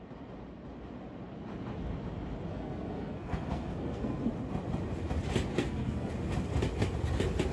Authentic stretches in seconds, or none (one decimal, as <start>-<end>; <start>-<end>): 0.0-2.5; 4.3-5.5; 6.1-7.5